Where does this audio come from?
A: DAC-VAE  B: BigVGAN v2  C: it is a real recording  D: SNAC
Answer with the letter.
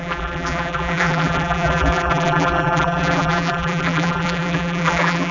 B